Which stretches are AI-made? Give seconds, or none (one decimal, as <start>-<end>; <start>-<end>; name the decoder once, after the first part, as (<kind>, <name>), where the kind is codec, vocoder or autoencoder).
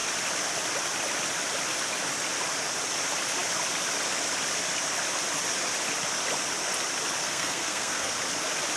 7.2-8.1 (codec, SNAC)